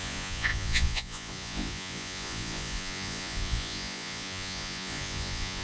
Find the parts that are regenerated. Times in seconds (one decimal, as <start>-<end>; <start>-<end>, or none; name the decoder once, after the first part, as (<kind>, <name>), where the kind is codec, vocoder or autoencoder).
0.0-5.6 (vocoder, Vocos)